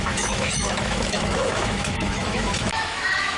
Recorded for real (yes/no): no